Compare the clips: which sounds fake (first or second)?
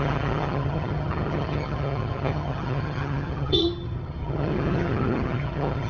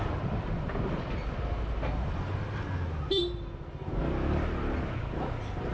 first